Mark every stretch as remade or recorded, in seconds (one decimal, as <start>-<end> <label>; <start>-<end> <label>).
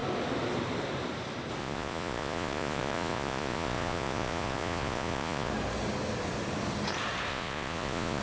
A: 0.0-1.6 recorded; 1.6-5.5 remade; 5.5-7.3 recorded; 7.3-8.2 remade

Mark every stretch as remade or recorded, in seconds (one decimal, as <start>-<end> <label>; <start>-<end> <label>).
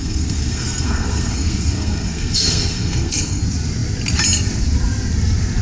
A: 0.0-3.4 remade; 3.4-5.6 recorded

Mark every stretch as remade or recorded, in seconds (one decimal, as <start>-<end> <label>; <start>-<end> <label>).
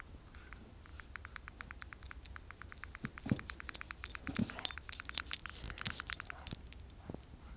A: 0.0-7.6 recorded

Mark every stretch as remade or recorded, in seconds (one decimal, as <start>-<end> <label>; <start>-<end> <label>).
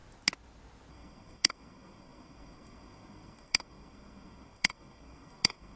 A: 0.0-0.9 recorded; 0.9-5.8 remade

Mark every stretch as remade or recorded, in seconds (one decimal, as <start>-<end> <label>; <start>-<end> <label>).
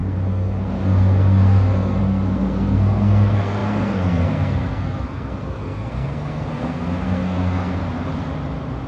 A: 0.0-7.8 remade; 7.8-8.9 recorded